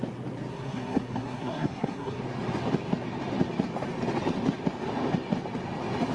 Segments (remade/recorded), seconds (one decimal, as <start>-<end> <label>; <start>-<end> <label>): 0.0-0.5 recorded; 0.5-2.2 remade; 2.2-6.1 recorded